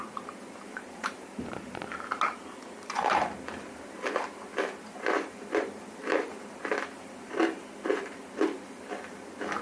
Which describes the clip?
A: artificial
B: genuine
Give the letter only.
A